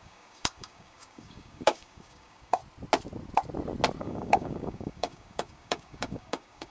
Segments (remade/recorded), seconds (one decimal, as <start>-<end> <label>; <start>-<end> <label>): 0.0-2.6 remade; 2.6-4.0 recorded; 4.0-6.7 remade